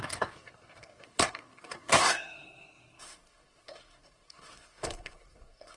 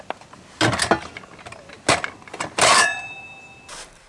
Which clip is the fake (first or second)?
first